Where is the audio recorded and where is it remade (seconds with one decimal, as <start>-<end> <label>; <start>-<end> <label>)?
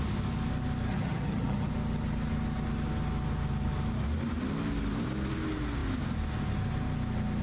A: 0.0-0.9 recorded; 0.9-1.7 remade; 1.7-7.4 recorded